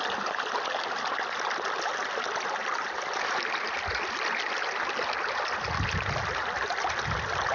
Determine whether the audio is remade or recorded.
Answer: recorded